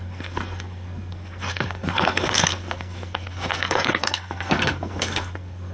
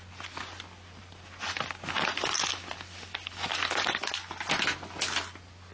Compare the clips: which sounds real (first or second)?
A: second